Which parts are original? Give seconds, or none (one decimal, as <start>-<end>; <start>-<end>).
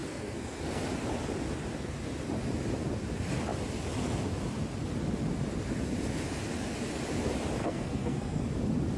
0.8-7.6; 8.4-9.0